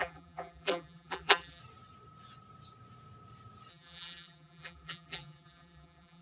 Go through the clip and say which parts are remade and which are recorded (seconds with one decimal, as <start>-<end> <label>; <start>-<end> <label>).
0.0-1.6 remade; 1.6-3.7 recorded; 3.7-6.2 remade